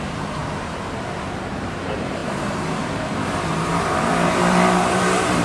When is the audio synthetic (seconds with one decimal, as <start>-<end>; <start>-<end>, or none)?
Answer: 0.0-0.4; 1.5-5.4